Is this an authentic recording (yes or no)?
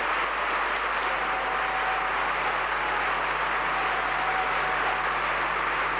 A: yes